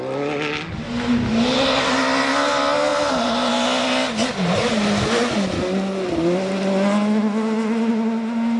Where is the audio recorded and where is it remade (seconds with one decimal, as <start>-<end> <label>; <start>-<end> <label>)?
0.0-8.6 recorded